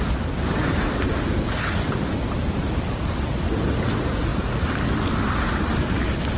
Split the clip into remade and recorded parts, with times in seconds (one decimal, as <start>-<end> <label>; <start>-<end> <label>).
0.0-6.4 recorded